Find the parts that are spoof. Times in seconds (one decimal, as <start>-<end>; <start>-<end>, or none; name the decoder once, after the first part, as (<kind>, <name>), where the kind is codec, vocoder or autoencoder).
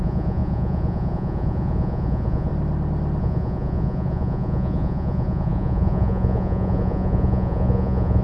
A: 0.0-2.5 (vocoder, Vocos); 3.2-8.2